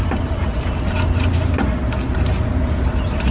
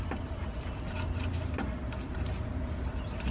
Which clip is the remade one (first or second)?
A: second